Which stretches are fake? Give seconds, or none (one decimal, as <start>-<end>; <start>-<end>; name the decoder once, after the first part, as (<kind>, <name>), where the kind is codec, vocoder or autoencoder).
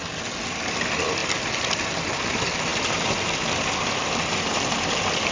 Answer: none